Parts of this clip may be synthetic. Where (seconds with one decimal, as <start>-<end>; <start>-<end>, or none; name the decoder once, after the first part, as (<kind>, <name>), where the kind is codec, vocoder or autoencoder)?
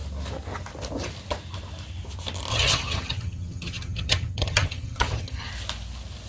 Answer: 2.5-5.5 (vocoder, HiFi-GAN)